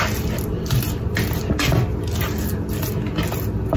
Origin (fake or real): real